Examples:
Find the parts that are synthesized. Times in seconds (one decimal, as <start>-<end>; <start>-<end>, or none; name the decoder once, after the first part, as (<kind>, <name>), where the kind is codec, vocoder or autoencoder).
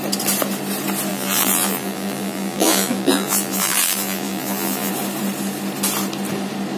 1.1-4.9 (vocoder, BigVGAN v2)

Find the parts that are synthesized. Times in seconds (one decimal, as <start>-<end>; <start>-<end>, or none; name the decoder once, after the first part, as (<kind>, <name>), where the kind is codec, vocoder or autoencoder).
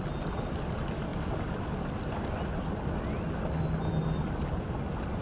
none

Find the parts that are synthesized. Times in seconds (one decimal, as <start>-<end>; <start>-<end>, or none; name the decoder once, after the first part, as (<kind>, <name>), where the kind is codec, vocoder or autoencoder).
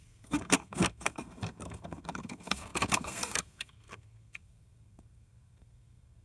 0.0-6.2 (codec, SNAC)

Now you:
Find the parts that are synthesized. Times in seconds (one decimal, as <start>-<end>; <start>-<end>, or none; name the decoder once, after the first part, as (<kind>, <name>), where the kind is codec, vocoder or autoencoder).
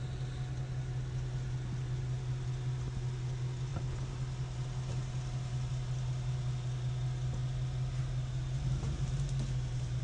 none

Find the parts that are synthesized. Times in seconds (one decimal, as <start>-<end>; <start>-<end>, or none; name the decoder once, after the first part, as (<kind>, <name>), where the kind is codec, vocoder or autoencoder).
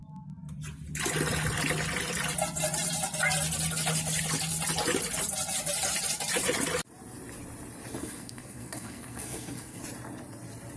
8.0-9.8 (codec, SNAC)